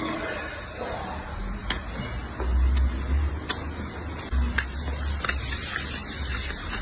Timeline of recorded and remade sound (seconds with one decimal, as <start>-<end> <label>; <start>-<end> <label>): 0.0-6.8 recorded